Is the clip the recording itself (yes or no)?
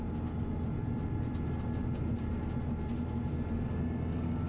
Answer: yes